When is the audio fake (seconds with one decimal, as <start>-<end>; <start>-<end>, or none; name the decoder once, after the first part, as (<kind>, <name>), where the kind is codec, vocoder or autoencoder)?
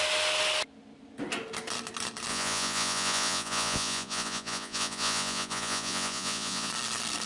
2.3-6.7 (vocoder, Vocos)